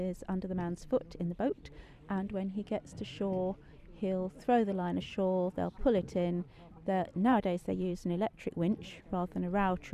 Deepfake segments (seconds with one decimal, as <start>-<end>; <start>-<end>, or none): 7.1-9.0